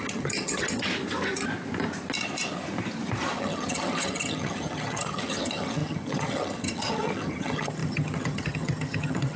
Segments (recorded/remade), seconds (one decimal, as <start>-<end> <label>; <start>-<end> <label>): 0.0-0.9 remade; 0.9-3.4 recorded; 3.4-9.4 remade